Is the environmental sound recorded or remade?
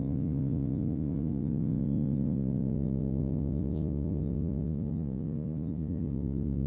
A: remade